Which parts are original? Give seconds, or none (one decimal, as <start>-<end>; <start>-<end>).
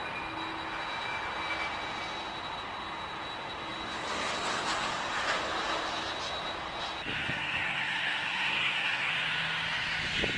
0.0-7.2; 9.1-10.4